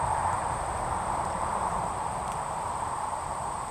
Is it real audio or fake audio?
fake